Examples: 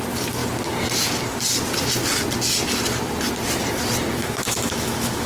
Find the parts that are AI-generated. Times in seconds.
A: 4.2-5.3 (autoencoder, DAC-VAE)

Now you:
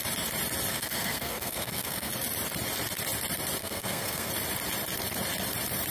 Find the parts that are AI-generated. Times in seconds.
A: 0.7-2.1 (codec, SNAC); 3.6-4.3

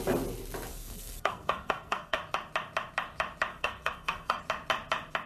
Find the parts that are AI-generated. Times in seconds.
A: 0.7-2.2 (codec, SNAC); 3.5-4.4

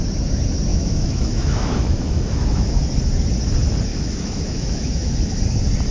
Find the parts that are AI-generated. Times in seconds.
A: 0.7-2.8 (autoencoder, DAC-VAE); 3.9-5.4

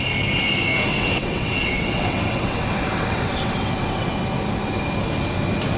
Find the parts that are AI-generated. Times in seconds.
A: 0.9-4.1 (vocoder, WaveNeXt)

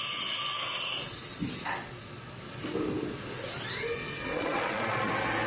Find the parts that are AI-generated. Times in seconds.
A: 4.3-5.1 (vocoder, Vocos)